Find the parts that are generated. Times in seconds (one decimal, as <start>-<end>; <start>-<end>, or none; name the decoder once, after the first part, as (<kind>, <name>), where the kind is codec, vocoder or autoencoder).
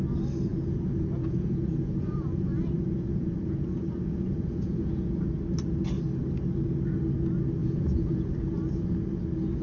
0.5-5.1 (vocoder, Vocos); 7.6-8.3